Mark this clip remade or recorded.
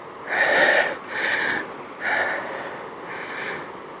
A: recorded